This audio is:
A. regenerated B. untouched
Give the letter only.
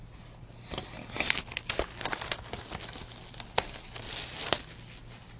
B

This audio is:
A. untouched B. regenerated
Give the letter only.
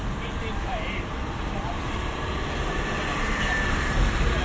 B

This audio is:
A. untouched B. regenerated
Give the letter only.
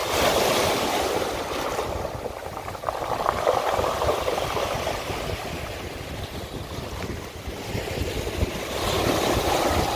A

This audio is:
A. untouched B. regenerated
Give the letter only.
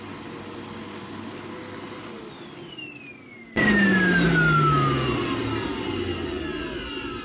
A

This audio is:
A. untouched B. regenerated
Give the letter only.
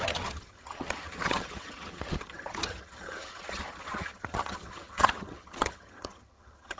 B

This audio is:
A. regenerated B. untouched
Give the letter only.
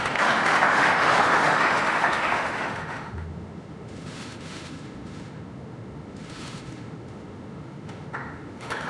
A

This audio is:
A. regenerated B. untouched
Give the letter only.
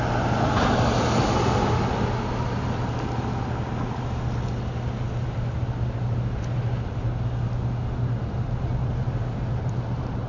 B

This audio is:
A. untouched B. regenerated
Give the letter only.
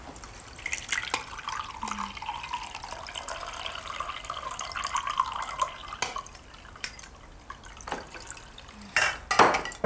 A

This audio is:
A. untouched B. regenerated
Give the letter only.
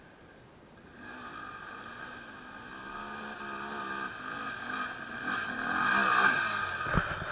A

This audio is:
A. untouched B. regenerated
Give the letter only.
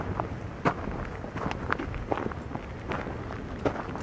A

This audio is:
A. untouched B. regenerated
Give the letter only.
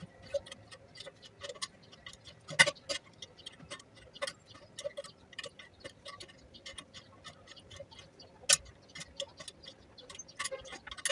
A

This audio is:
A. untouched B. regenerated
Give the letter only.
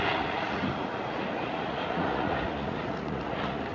B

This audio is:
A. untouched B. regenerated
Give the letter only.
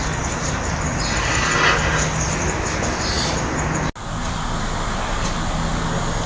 A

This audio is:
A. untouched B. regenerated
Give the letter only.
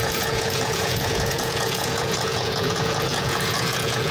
B